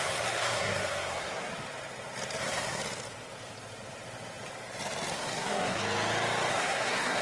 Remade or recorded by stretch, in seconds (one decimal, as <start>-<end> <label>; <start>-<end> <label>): 0.0-1.5 remade; 1.5-2.4 recorded; 2.4-2.8 remade; 2.8-5.1 recorded; 5.1-5.8 remade; 5.8-6.5 recorded; 6.5-7.2 remade